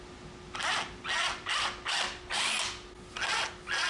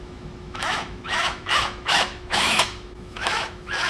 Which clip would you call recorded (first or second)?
first